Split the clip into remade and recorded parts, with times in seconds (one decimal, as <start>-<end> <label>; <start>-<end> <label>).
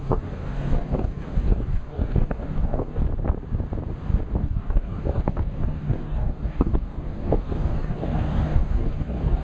0.0-3.0 remade; 3.0-4.4 recorded; 4.4-9.4 remade